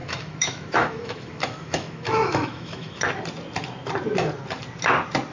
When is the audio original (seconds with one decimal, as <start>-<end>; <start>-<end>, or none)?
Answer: 3.2-5.3